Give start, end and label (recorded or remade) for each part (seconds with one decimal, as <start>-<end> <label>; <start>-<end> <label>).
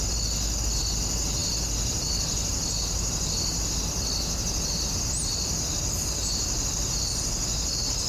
0.0-8.1 recorded